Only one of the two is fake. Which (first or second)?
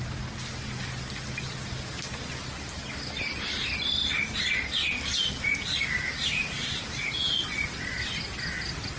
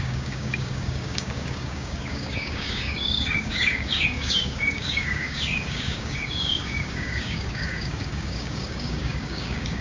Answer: second